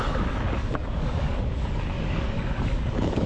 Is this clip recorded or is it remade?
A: remade